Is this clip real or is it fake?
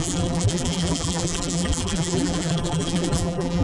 fake